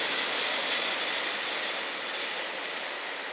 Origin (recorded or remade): recorded